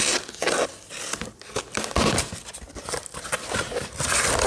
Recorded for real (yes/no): yes